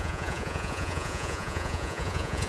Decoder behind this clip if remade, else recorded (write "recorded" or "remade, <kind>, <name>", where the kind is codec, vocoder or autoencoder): remade, vocoder, Vocos